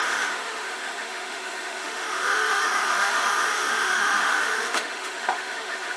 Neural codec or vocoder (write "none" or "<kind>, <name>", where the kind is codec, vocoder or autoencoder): autoencoder, DAC-VAE